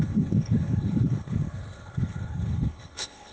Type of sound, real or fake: fake